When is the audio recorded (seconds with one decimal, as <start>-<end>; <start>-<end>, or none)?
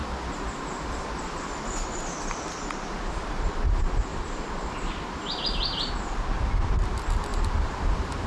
0.0-4.1; 5.9-7.3; 7.8-8.3